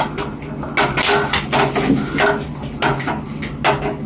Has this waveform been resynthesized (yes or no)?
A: no